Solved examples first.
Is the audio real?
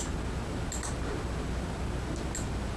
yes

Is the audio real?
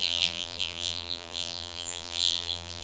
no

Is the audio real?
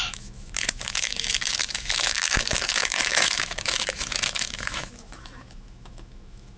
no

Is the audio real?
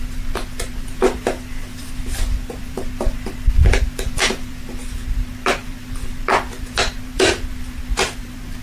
no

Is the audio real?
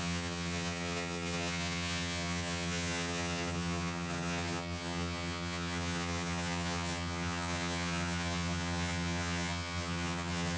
no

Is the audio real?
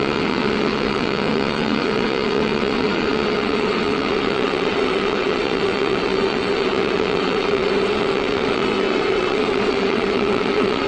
no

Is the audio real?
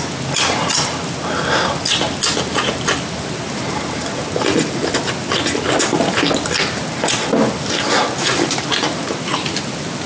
yes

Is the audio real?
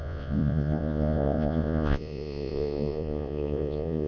no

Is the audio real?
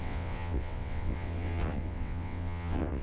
no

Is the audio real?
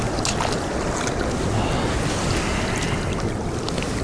yes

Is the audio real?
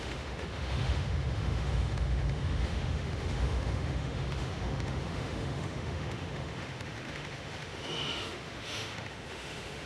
no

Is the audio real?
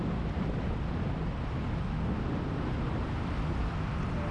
yes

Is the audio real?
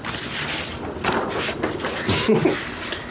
yes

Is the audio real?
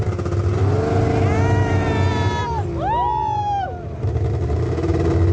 yes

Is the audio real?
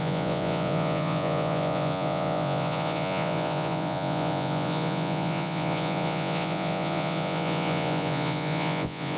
no